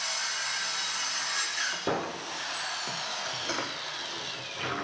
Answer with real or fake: real